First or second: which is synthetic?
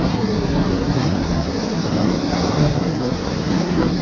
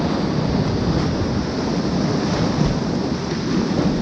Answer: first